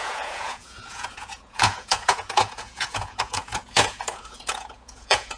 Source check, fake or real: fake